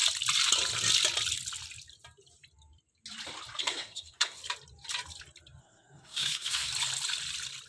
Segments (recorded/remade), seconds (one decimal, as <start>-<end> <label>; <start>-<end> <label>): 0.0-3.6 recorded; 3.6-4.4 remade; 4.4-5.6 recorded; 5.6-6.7 remade; 6.7-7.7 recorded